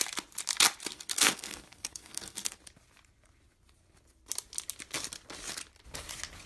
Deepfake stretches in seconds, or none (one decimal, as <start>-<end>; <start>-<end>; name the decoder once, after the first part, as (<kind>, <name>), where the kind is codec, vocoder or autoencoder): 0.9-2.6 (codec, SNAC)